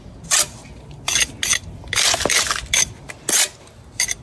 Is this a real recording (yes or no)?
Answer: yes